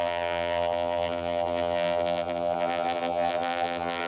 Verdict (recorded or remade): remade